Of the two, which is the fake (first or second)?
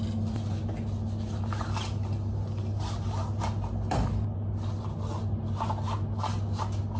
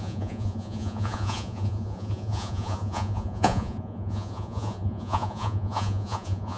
second